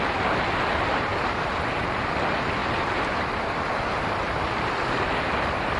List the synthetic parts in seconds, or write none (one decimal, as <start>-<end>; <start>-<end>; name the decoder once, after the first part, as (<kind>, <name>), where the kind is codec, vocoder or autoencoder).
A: 2.6-4.7 (vocoder, BigVGAN v2)